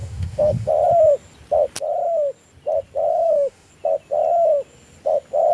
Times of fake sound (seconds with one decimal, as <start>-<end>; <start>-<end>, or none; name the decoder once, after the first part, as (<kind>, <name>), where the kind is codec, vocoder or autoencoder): 0.0-0.7 (autoencoder, DAC-VAE); 3.1-3.7